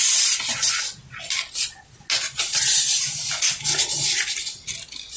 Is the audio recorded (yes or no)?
yes